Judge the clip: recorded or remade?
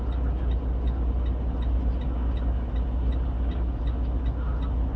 recorded